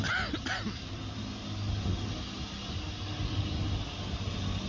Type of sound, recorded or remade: recorded